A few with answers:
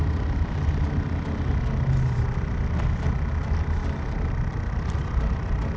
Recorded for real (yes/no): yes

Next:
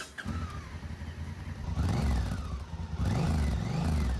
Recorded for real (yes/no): yes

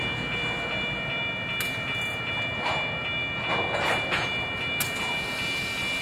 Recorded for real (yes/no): yes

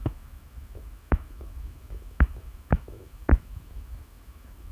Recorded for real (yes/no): no